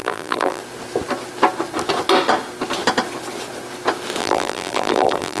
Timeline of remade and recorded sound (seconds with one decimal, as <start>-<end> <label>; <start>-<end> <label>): 0.0-0.6 remade; 0.6-4.2 recorded; 4.2-5.4 remade